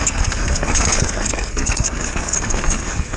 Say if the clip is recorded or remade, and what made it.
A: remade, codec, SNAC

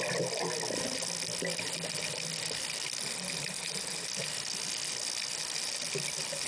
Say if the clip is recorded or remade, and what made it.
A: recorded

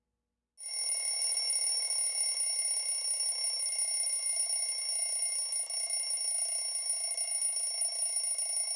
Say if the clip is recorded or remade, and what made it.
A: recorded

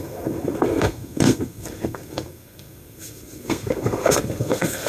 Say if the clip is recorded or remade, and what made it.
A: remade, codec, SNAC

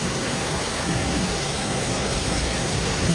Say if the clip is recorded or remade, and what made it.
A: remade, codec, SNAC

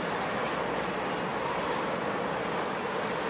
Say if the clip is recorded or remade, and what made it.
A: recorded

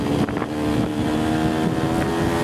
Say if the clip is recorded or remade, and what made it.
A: recorded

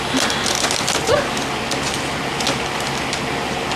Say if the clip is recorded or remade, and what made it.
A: recorded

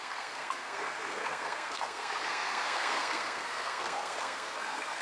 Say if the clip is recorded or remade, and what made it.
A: remade, codec, SNAC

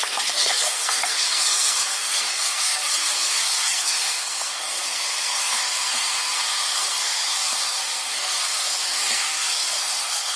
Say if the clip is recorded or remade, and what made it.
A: remade, codec, SNAC